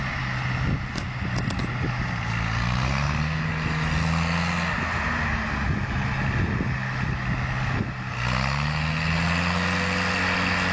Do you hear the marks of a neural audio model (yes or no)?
no